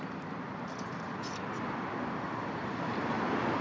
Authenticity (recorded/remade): recorded